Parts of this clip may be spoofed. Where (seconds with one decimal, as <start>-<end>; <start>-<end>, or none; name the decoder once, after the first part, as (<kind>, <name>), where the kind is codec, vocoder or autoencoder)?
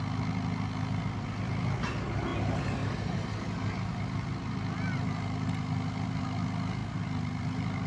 none